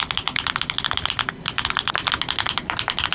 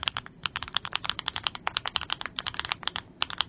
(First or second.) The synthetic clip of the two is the second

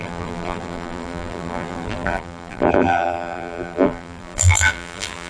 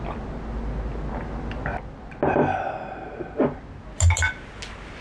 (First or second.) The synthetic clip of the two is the first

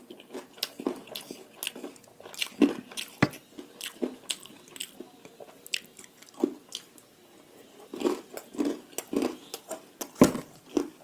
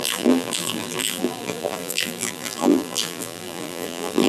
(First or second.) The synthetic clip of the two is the second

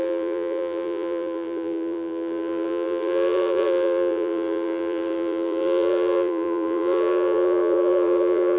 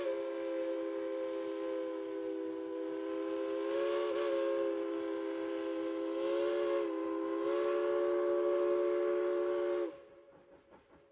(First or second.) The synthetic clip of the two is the first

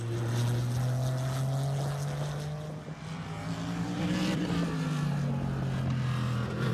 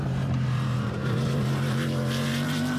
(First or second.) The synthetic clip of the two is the second